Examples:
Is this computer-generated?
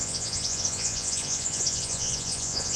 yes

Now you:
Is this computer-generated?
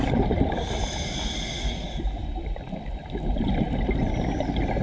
no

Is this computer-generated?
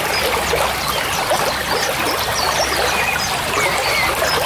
no